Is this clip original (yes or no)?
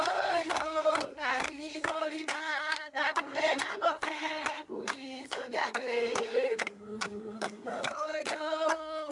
no